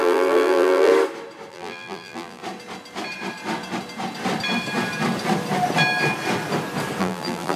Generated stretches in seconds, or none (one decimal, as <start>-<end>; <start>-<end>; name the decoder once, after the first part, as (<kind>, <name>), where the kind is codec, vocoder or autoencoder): 0.0-0.9 (vocoder, BigVGAN v2); 1.5-2.4; 7.0-7.6